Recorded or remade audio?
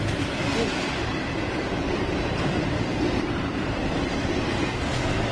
remade